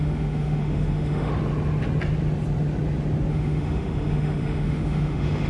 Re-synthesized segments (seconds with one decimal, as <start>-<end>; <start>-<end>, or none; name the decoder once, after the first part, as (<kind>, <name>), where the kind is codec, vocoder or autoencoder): 0.0-1.3 (autoencoder, DAC-VAE); 3.3-5.5